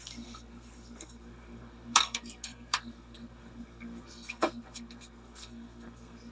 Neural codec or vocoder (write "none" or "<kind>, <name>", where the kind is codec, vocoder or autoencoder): codec, SNAC